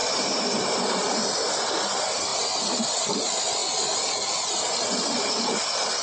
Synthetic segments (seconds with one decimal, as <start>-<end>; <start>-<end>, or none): none